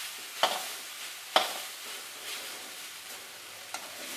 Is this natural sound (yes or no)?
yes